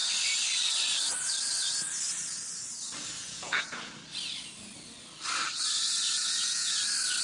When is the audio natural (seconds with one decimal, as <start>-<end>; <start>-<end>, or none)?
0.0-3.2; 3.9-6.2; 6.8-7.2